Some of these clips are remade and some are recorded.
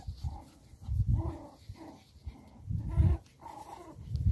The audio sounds recorded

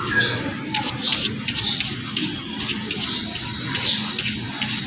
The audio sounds recorded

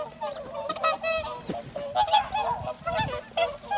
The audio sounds recorded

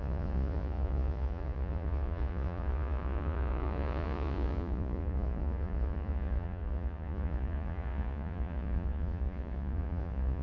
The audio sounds remade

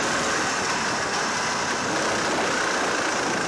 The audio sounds recorded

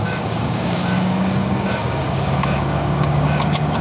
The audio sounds remade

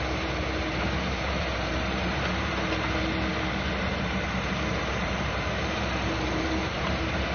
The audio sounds remade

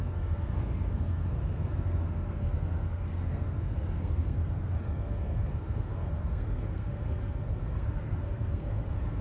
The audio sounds remade